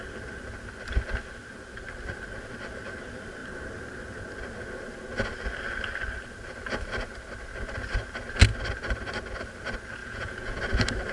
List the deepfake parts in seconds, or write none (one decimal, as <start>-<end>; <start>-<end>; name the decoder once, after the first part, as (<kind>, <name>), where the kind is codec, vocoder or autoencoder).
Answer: 10.0-10.6 (vocoder, Vocos)